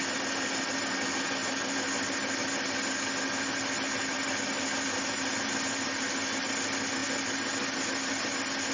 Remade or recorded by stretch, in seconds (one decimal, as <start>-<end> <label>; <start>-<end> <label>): 0.0-8.7 recorded